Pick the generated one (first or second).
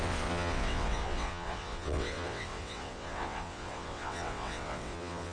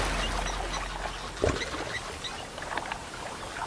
first